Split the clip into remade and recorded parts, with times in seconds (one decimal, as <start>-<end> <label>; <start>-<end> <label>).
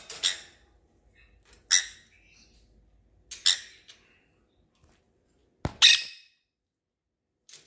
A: 0.0-7.7 recorded